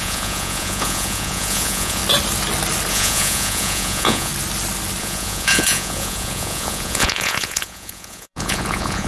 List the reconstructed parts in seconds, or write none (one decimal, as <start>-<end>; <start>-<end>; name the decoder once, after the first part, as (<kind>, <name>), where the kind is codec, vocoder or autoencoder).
0.0-2.0 (vocoder, Vocos); 2.9-4.3; 5.0-9.1